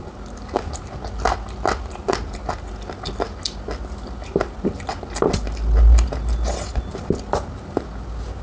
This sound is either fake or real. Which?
real